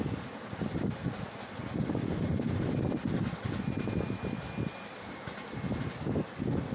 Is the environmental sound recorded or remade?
recorded